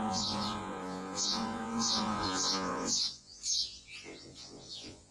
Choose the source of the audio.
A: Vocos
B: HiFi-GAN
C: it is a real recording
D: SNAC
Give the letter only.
A